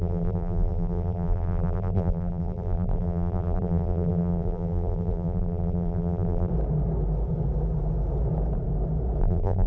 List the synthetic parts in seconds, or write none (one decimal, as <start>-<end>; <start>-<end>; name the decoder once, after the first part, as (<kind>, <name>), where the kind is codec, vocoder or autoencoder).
0.0-6.5 (vocoder, BigVGAN v2); 9.2-9.7